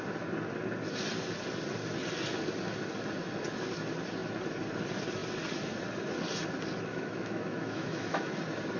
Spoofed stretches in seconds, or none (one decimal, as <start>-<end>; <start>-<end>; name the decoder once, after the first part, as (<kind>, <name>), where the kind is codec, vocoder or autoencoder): 6.9-8.4 (autoencoder, DAC-VAE)